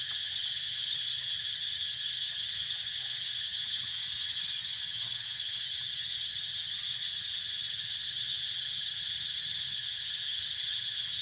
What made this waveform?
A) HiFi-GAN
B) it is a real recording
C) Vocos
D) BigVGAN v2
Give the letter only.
A